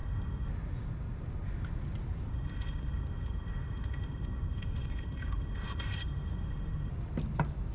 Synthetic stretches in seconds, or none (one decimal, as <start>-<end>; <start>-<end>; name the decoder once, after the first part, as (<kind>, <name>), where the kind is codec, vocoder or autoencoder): 0.0-0.5 (autoencoder, DAC-VAE); 2.3-6.9